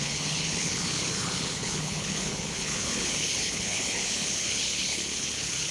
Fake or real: fake